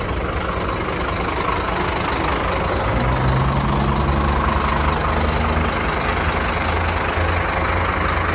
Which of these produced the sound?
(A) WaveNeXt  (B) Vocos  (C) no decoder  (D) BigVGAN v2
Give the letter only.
C